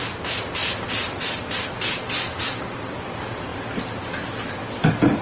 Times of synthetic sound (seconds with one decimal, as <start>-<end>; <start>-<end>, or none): 0.0-3.5; 4.5-5.2